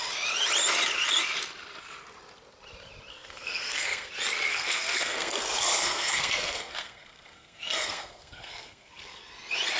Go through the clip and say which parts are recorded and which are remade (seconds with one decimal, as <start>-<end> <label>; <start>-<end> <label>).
0.0-3.1 recorded; 3.1-4.1 remade; 4.1-4.5 recorded; 4.5-9.2 remade; 9.2-9.8 recorded